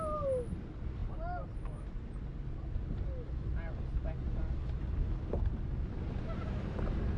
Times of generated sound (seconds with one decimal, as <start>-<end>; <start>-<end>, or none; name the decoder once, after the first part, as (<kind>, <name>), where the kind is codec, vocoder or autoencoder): none